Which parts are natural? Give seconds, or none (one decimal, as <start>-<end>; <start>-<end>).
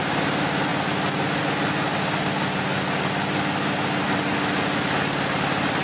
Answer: 0.0-5.8